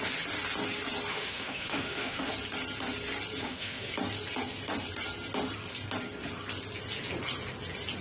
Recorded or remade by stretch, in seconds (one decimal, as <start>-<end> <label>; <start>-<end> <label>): 0.0-1.1 recorded; 1.1-2.3 remade; 2.3-3.4 recorded; 3.4-3.9 remade; 3.9-8.0 recorded